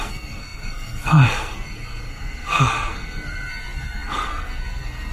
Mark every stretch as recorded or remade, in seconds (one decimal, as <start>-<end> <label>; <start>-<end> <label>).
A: 0.0-5.1 remade